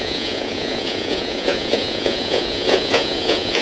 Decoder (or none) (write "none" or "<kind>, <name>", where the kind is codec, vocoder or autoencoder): vocoder, Vocos